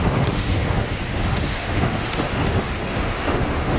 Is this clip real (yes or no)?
no